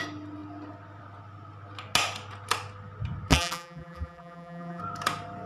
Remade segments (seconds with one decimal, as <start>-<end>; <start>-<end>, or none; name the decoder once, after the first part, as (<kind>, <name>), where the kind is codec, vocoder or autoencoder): 3.3-4.8 (vocoder, BigVGAN v2)